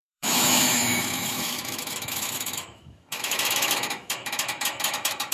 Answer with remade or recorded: remade